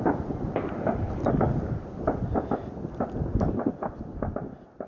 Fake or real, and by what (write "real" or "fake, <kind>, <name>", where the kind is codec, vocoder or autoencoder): real